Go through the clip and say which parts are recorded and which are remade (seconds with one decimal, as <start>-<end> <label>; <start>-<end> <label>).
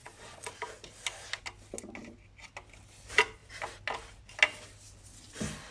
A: 0.0-0.5 remade; 0.5-5.7 recorded